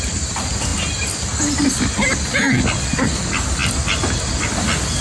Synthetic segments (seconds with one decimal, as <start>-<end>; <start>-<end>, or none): none